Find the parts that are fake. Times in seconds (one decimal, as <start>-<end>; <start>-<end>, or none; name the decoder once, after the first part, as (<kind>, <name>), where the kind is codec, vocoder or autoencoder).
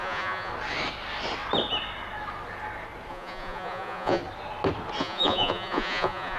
0.0-0.5 (vocoder, Vocos); 3.1-4.2; 5.0-6.4